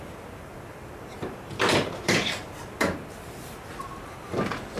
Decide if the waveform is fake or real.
fake